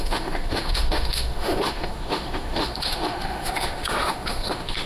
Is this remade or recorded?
remade